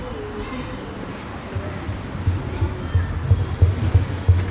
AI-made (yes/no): no